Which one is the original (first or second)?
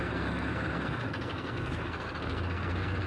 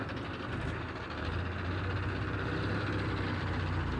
second